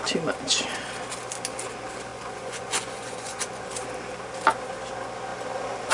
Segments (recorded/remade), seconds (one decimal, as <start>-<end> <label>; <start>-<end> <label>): 0.0-2.1 recorded; 2.1-3.7 remade; 3.7-5.9 recorded